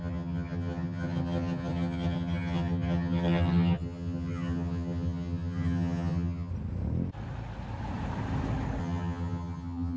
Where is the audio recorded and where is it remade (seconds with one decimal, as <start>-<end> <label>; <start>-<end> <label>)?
0.0-6.5 remade; 6.5-8.8 recorded; 8.8-10.0 remade